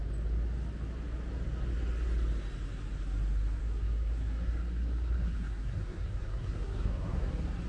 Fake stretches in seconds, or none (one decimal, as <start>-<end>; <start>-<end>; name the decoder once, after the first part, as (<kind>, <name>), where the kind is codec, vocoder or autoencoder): 3.6-7.3 (codec, SNAC)